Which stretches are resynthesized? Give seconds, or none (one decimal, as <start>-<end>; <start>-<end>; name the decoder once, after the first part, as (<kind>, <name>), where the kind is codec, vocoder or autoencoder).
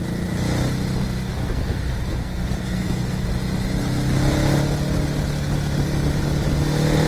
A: 1.4-3.2 (codec, SNAC)